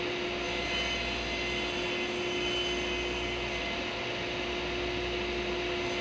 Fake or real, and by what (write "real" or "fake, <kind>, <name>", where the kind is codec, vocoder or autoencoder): real